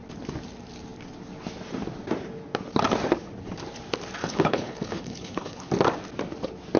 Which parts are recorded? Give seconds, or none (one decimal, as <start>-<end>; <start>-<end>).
0.0-4.2; 5.7-6.8